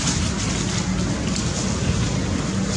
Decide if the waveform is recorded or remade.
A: recorded